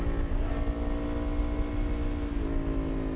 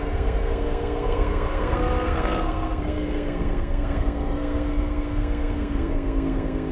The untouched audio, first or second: first